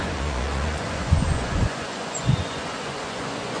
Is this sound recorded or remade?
remade